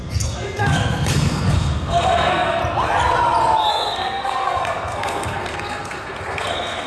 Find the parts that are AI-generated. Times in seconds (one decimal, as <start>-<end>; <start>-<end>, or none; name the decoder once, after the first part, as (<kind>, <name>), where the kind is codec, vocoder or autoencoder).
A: 0.0-2.6 (codec, SNAC); 3.7-6.9

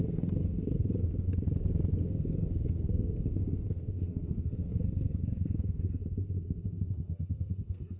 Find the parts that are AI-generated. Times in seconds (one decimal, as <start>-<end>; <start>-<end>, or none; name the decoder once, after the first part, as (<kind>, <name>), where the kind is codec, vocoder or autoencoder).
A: 0.0-1.3 (codec, SNAC); 2.0-8.0

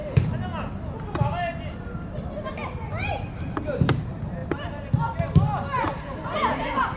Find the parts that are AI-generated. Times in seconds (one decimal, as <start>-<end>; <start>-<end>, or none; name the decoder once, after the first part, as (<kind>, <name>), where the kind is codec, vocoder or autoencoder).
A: none

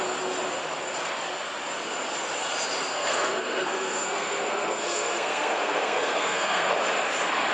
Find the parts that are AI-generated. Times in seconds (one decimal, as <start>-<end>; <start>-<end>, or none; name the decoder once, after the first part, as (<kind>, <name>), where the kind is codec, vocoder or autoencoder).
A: 2.9-6.7 (codec, SNAC)